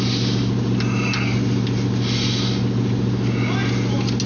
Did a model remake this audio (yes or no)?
no